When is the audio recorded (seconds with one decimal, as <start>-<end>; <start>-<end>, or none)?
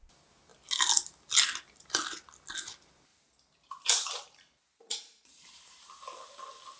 0.0-3.1; 5.9-6.8